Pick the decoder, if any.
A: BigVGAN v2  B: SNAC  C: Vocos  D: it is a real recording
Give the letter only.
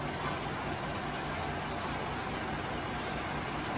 D